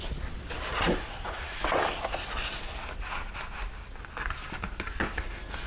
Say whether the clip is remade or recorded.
recorded